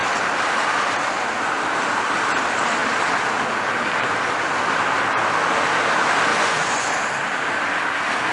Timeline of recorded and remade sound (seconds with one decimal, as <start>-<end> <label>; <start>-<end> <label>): 0.0-6.3 recorded; 6.3-6.9 remade; 6.9-8.3 recorded